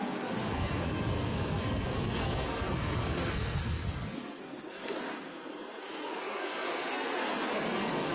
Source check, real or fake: fake